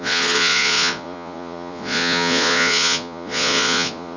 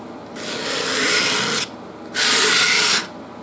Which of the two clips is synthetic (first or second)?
first